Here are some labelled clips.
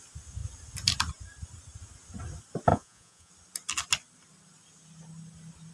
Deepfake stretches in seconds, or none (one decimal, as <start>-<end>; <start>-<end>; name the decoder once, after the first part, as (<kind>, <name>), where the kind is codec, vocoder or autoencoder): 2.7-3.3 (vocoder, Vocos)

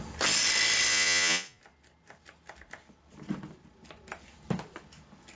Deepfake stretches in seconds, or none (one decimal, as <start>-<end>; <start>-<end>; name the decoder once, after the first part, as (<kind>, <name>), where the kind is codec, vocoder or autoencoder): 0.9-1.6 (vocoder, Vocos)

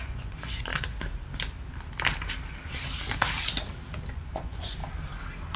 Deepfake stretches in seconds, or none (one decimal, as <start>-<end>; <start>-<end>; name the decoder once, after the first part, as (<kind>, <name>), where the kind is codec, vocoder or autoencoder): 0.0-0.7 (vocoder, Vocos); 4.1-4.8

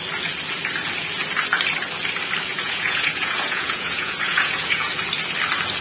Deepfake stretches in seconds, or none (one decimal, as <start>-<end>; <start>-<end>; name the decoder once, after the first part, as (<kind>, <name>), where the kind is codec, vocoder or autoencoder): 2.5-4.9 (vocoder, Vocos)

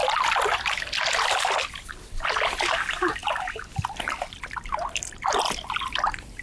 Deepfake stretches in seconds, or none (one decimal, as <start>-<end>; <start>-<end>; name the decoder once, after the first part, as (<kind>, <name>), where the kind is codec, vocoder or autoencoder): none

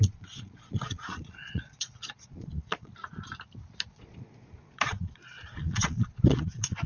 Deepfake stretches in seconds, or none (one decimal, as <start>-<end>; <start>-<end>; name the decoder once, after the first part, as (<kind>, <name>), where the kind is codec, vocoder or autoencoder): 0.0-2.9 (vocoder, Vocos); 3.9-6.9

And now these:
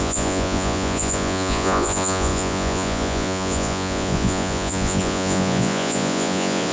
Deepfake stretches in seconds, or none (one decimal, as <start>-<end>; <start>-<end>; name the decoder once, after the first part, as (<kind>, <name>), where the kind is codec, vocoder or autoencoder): 0.0-6.7 (vocoder, Vocos)

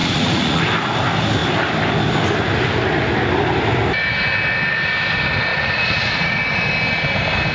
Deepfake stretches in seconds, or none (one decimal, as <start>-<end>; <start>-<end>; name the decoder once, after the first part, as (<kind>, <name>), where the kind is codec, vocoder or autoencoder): 0.0-0.6 (vocoder, Vocos); 5.5-6.4